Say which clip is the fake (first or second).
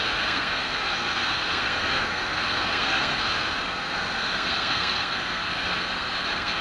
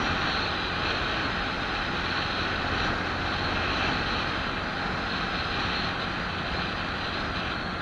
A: first